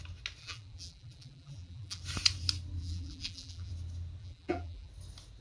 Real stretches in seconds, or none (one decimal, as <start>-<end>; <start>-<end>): 0.0-0.4; 2.0-2.8; 3.7-4.2; 4.9-5.4